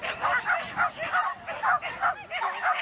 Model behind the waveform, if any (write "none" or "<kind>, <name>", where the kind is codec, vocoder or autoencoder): none